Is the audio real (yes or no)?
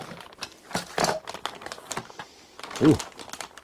yes